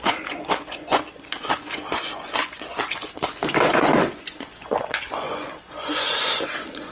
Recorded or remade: remade